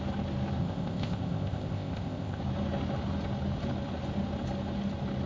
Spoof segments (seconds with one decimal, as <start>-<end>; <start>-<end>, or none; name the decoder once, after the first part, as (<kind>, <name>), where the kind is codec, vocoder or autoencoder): 0.6-2.4 (codec, ZipCodec)